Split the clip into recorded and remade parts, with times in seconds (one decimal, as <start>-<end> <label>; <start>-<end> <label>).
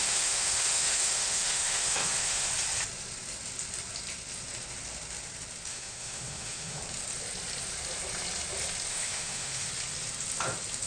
0.0-2.5 remade; 2.5-5.7 recorded; 5.7-6.8 remade; 6.8-8.9 recorded; 8.9-9.7 remade; 9.7-10.9 recorded